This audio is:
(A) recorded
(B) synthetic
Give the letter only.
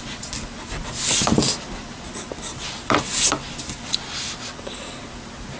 A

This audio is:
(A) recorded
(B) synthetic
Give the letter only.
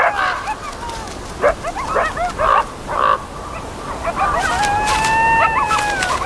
A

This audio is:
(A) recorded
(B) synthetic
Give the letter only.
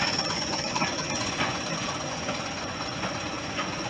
B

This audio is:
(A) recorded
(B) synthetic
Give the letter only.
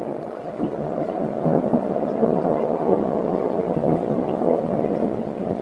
B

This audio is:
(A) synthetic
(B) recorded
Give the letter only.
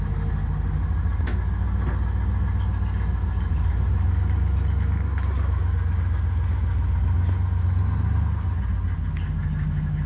B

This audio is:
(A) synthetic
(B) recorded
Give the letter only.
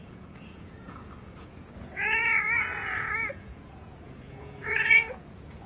A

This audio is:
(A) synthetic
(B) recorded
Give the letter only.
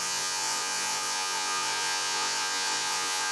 A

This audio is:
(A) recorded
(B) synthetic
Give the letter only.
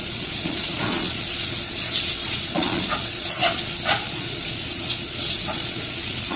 B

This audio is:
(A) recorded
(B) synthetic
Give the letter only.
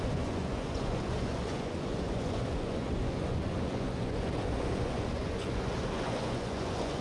B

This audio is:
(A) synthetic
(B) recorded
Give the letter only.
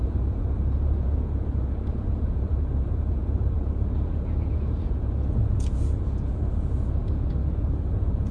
A